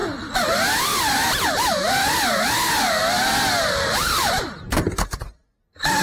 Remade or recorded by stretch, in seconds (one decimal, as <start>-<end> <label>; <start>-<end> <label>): 0.0-3.6 recorded; 3.6-6.0 remade